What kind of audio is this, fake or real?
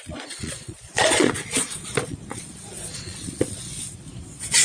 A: fake